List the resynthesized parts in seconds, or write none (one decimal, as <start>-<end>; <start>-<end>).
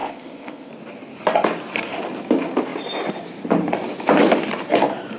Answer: 0.0-0.7